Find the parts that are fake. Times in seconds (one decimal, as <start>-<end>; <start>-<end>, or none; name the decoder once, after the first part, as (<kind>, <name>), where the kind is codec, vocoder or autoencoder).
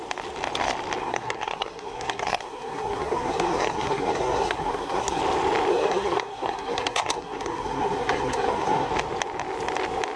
1.0-5.2 (codec, SNAC); 5.7-8.9